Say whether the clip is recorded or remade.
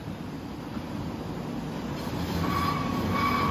recorded